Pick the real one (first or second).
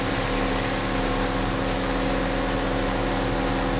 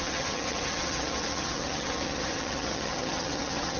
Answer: first